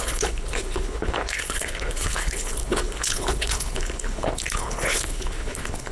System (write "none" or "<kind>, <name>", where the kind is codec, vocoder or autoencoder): codec, HILCodec